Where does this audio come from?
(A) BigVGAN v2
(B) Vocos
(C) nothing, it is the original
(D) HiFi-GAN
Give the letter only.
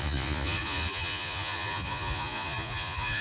B